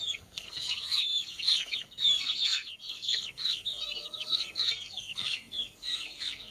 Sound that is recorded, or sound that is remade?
remade